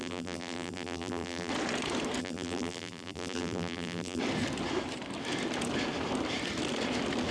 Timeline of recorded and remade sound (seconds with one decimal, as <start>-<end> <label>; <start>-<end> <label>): 0.0-1.5 remade; 1.5-2.2 recorded; 2.2-4.2 remade; 4.2-7.3 recorded